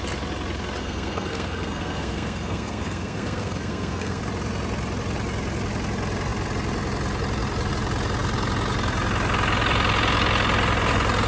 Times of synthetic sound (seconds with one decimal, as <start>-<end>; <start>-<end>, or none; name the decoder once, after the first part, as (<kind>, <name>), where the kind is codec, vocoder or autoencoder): 0.8-4.2 (codec, SNAC)